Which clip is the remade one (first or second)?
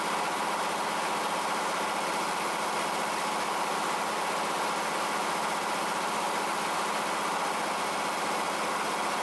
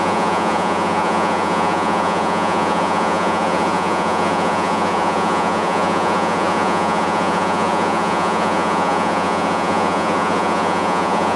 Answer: second